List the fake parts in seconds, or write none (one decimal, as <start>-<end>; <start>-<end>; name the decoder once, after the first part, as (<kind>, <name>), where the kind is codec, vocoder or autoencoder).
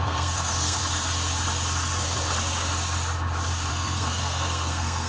0.0-0.8 (codec, SNAC); 3.7-5.1